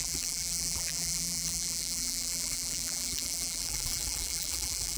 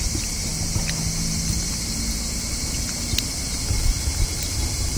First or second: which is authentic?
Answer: second